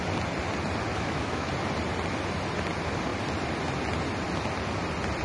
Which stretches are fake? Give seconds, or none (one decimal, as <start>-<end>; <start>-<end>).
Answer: 0.9-1.5